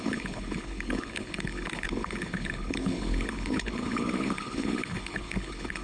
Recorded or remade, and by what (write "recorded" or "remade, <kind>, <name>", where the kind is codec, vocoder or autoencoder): remade, codec, HILCodec